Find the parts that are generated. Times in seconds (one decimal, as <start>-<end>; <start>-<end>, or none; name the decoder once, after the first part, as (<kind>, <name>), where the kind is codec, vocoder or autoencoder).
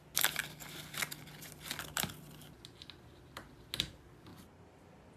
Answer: none